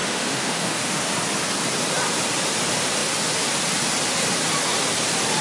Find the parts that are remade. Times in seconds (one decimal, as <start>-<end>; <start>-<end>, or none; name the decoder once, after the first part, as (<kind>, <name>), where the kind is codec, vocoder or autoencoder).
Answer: 0.0-1.1 (autoencoder, DAC-VAE)